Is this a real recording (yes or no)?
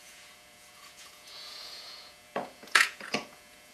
no